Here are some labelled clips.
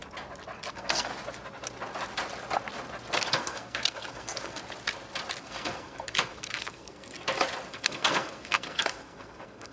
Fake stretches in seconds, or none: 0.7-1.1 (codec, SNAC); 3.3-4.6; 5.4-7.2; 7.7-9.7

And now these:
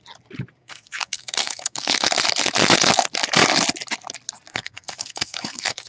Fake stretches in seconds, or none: 0.6-2.1 (codec, SNAC); 4.5-5.9

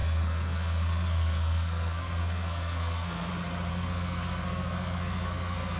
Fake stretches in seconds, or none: 0.0-3.3 (codec, SNAC); 3.7-5.8

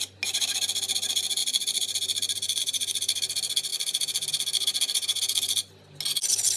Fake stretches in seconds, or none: none